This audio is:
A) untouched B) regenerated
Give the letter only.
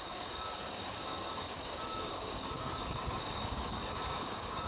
B